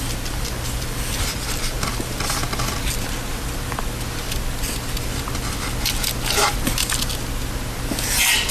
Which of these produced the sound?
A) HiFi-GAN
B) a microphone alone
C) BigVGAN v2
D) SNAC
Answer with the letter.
B